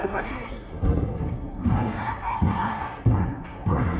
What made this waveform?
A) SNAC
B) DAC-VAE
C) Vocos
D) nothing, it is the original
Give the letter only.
A